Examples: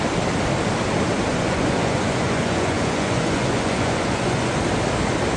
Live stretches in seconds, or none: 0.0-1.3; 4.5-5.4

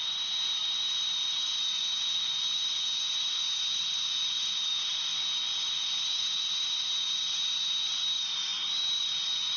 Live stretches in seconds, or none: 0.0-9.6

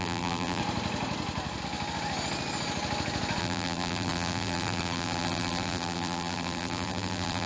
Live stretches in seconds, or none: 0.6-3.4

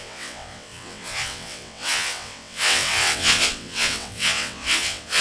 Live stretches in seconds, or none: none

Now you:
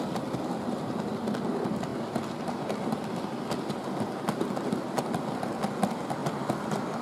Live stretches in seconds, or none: 0.0-7.0